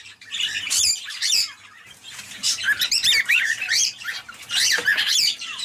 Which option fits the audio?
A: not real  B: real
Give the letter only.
A